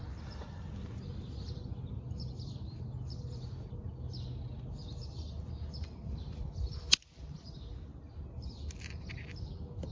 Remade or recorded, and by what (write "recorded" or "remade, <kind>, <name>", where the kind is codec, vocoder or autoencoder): recorded